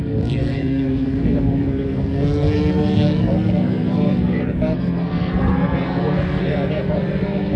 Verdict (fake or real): fake